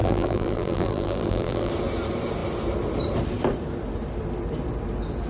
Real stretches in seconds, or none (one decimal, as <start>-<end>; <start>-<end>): 1.7-5.3